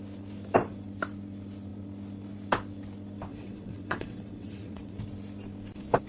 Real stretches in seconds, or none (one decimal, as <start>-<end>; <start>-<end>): 0.0-3.3; 5.0-6.1